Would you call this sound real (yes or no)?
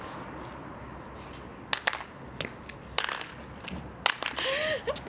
yes